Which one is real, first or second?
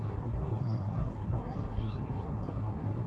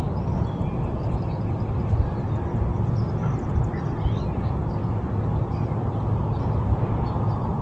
second